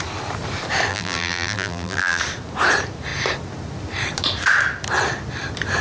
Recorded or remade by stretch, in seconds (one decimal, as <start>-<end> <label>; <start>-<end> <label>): 0.0-0.9 recorded; 0.9-2.2 remade; 2.2-5.8 recorded